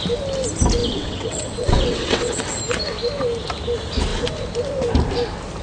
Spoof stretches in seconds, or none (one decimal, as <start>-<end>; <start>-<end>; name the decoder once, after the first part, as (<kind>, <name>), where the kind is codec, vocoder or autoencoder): 0.8-2.6 (vocoder, WaveNeXt)